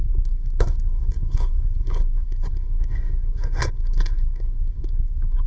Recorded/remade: remade